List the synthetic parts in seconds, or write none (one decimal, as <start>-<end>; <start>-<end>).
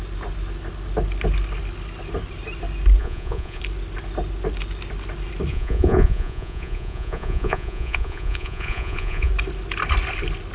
3.0-3.6; 5.5-9.3